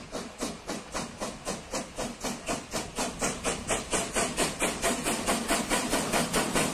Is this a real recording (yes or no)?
yes